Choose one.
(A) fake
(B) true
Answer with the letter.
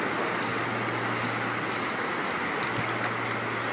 B